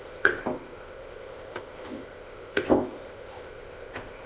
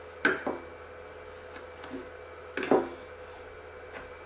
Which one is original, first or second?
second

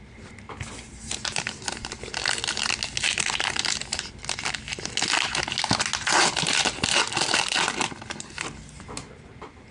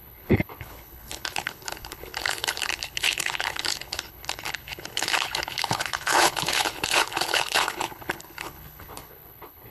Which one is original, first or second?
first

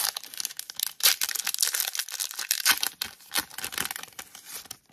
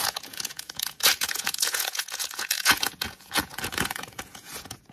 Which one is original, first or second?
first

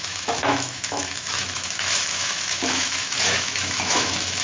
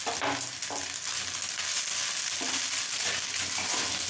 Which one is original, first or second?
second